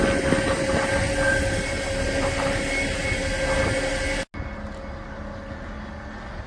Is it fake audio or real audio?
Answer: real